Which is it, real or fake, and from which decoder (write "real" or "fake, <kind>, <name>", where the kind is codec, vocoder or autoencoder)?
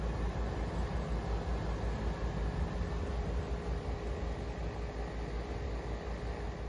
real